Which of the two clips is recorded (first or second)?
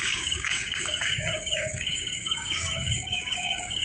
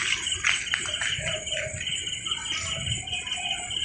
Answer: second